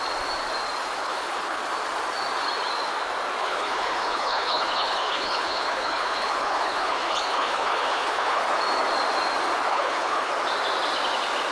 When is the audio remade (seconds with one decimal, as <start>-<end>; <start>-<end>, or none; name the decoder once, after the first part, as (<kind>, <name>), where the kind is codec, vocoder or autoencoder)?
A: 1.0-1.6 (codec, HILCodec); 3.4-8.4; 9.7-10.3